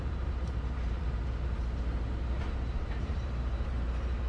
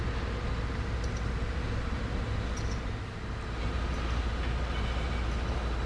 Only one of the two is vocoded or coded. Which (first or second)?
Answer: first